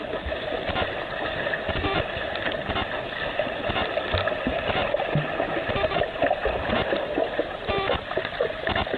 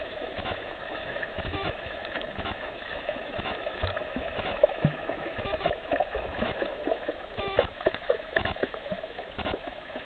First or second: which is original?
first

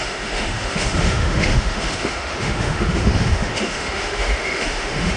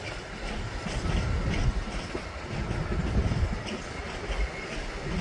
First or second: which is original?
second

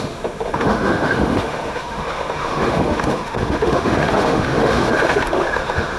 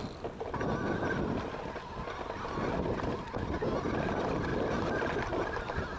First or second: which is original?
second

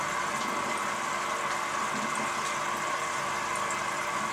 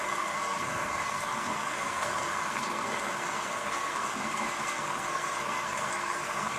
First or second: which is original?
first